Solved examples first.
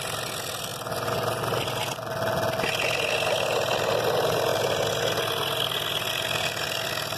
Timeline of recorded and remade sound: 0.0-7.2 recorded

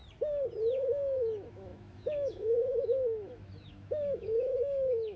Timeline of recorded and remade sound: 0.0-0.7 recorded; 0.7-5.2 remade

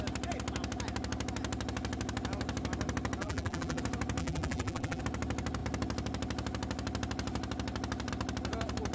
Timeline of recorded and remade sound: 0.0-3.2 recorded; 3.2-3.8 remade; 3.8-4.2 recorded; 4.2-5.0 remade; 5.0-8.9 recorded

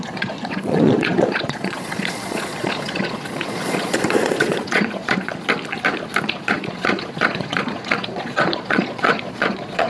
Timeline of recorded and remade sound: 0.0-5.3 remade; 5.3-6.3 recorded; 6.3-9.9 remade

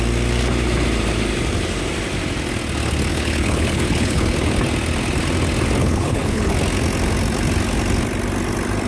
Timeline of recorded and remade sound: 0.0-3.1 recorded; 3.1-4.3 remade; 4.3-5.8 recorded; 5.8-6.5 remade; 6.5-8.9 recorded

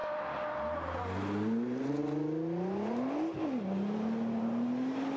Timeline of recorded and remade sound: 0.0-5.2 recorded